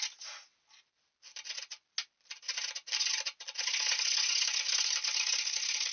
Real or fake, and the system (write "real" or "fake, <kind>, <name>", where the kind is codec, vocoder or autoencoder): real